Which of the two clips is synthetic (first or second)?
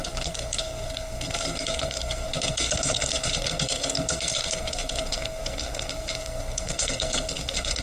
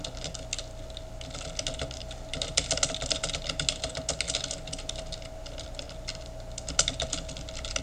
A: first